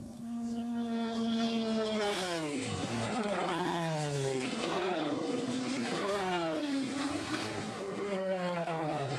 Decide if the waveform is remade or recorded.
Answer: remade